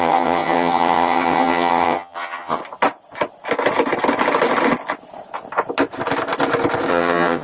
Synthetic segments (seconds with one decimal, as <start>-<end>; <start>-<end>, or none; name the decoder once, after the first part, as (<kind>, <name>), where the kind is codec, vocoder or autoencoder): 0.0-2.6 (vocoder, HiFi-GAN); 6.9-7.4